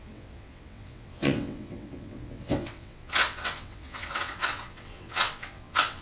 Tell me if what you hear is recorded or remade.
remade